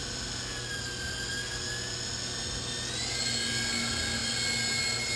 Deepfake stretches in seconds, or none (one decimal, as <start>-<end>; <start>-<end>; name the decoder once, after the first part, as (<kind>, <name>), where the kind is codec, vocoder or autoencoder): none